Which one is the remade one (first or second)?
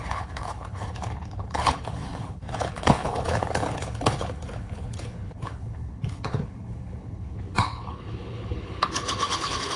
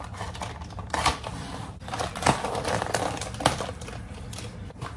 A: first